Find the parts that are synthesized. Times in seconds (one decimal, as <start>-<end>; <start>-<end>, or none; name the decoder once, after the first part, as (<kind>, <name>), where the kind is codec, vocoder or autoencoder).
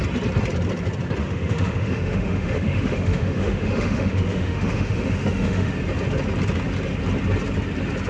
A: 1.2-5.7 (autoencoder, DAC-VAE)